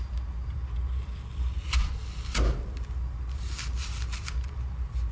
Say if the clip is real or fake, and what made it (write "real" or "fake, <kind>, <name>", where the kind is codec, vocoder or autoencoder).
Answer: real